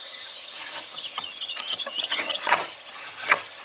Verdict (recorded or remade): remade